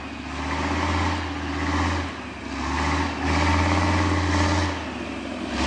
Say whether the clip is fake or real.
real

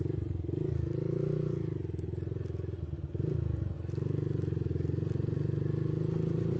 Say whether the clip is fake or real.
real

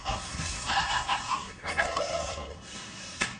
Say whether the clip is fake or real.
fake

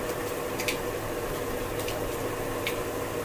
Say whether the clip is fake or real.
real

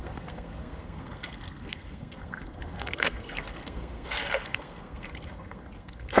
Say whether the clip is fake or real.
fake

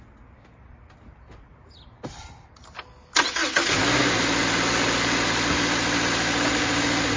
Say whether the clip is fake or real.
real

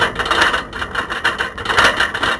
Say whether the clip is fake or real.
real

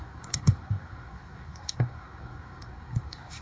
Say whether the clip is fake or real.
fake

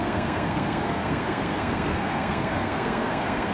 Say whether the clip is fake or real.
fake